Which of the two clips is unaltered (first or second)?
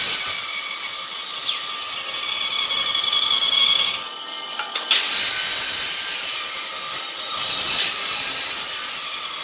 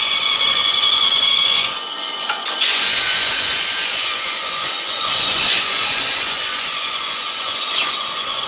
first